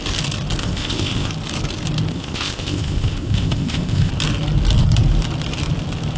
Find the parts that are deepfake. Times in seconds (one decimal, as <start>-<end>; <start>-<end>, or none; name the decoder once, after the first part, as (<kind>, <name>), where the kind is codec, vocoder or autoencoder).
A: 0.6-1.3 (codec, ZipCodec); 2.1-4.1